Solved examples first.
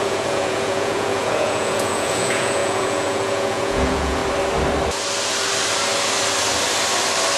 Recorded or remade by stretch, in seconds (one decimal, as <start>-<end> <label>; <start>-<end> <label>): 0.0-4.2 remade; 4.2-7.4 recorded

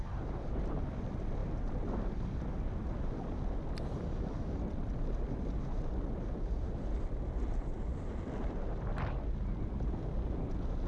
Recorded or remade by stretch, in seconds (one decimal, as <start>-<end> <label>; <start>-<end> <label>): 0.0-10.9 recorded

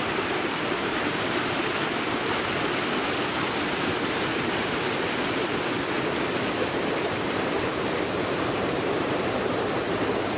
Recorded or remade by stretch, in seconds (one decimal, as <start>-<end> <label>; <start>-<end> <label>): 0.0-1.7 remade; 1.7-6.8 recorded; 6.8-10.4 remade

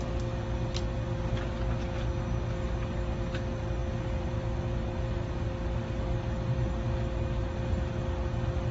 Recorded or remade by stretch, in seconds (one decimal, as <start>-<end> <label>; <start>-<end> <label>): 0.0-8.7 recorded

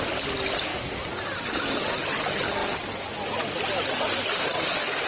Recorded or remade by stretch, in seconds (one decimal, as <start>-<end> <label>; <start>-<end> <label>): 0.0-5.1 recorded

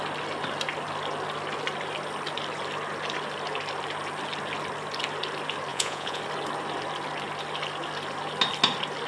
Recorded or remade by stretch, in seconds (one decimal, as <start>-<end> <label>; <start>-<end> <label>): 0.0-5.7 recorded; 5.7-6.2 remade; 6.2-9.1 recorded